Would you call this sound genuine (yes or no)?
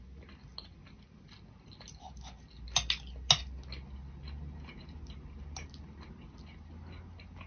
yes